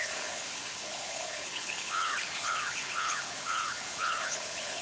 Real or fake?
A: fake